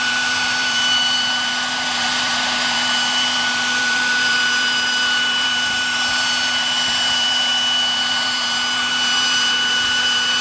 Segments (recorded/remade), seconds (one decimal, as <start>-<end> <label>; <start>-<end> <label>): 0.0-7.5 remade; 7.5-8.0 recorded; 8.0-10.4 remade